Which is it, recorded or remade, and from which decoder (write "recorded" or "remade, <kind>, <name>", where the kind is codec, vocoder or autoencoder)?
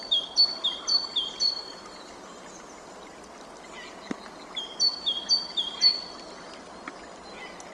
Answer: recorded